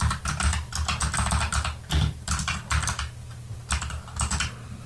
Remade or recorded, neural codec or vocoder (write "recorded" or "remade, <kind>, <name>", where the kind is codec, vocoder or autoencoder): recorded